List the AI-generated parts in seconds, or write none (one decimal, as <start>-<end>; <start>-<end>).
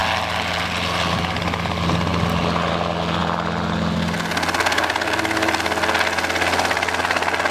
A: none